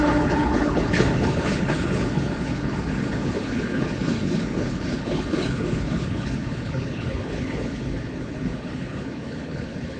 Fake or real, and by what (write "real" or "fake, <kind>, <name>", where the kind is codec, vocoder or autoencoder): fake, codec, HILCodec